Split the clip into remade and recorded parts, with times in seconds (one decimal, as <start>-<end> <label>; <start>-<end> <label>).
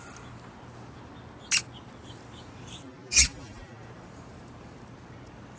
0.0-2.0 recorded; 2.0-4.8 remade; 4.8-5.6 recorded